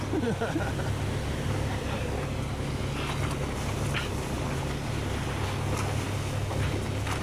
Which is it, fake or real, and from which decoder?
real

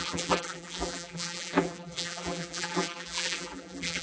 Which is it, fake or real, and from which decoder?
fake, vocoder, BigVGAN v2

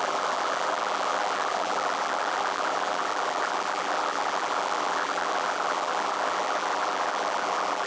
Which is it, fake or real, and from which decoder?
fake, vocoder, BigVGAN v2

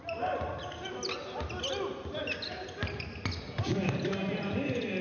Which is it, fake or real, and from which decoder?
real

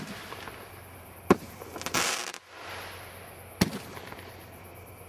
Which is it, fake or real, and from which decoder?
real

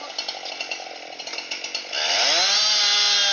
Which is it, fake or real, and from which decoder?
real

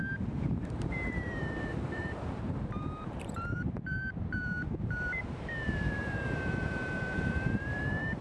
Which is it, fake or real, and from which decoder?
fake, vocoder, BigVGAN v2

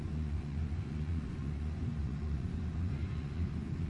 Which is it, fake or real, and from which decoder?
fake, vocoder, Vocos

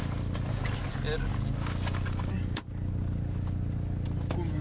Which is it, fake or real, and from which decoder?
real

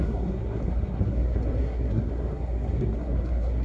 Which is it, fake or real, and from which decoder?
fake, codec, SNAC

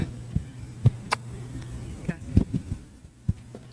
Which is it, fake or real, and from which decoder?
real